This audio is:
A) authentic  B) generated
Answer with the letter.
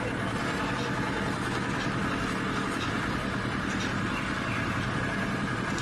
A